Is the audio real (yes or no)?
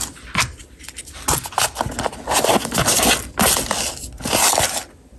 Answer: yes